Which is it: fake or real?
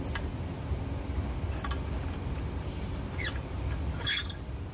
real